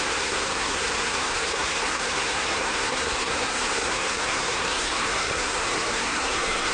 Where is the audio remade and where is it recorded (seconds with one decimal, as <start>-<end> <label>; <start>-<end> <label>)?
0.0-6.7 remade